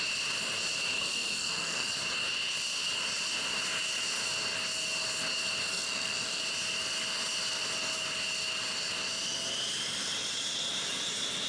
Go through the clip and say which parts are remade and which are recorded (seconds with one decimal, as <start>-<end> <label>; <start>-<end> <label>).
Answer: 0.0-1.0 recorded; 1.0-1.9 remade; 1.9-5.7 recorded; 5.7-6.4 remade; 6.4-11.5 recorded